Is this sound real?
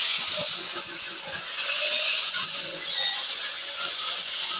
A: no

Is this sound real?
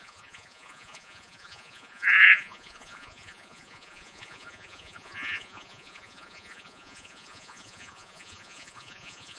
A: no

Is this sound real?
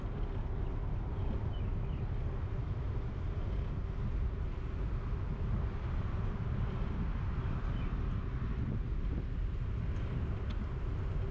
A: yes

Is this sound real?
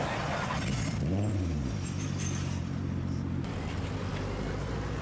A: yes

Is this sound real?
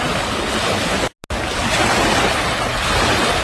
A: yes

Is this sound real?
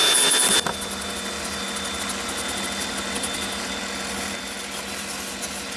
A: yes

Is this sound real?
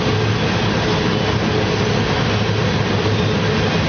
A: yes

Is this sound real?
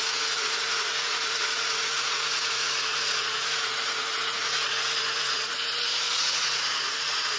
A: no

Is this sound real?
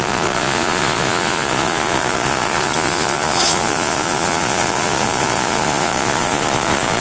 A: no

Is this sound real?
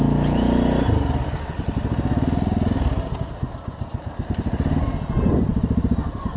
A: yes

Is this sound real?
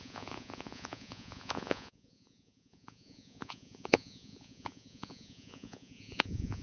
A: no